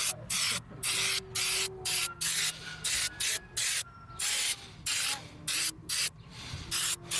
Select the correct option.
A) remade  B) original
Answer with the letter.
B